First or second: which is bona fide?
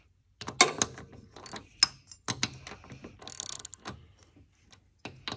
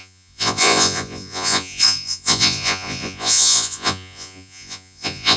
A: first